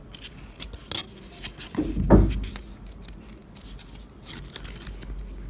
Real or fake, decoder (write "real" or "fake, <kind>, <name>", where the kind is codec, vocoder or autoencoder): real